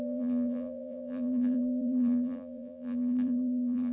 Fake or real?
fake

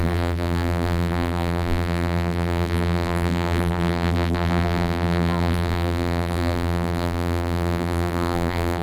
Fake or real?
fake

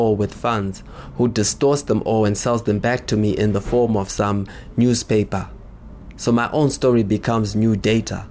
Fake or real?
real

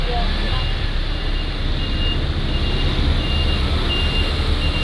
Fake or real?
real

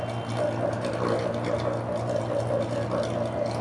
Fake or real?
real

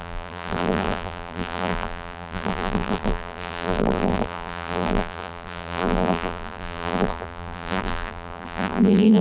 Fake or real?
fake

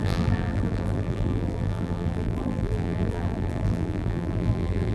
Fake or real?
fake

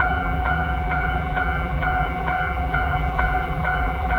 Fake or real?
fake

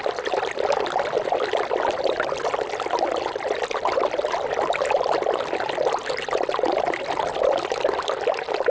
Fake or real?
real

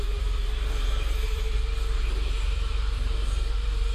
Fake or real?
fake